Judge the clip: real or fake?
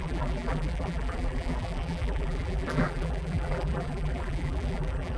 fake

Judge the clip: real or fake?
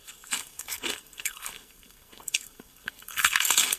fake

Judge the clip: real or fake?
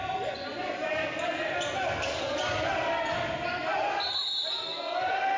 real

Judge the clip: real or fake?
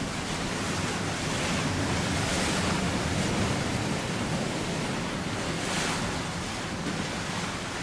real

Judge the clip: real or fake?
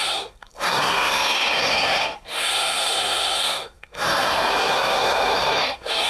fake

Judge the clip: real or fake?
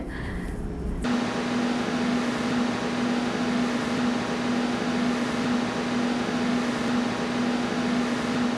real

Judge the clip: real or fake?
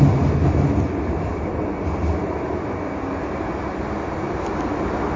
real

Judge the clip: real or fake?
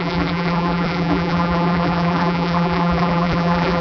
fake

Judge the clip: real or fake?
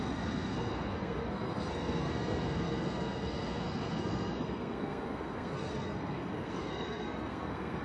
fake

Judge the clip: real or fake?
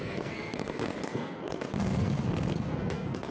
fake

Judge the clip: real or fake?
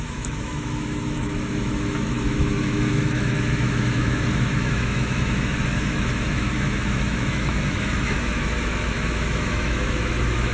fake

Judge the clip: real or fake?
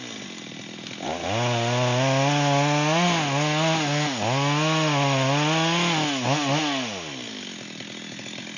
real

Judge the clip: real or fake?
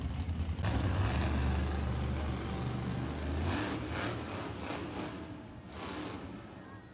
real